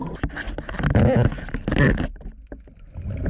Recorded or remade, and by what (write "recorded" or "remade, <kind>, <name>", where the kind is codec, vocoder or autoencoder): recorded